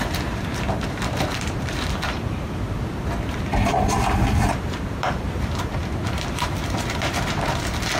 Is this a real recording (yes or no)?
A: no